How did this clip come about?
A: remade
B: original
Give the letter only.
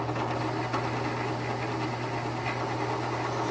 B